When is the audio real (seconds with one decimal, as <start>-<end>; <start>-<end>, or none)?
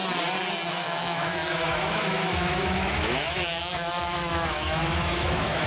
0.0-0.7